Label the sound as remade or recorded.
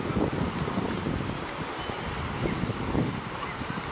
recorded